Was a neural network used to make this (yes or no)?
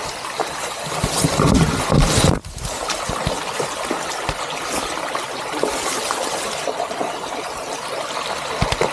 no